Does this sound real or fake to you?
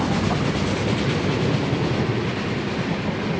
real